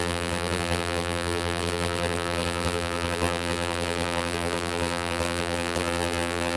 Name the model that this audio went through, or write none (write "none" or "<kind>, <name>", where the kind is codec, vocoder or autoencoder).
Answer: vocoder, BigVGAN v2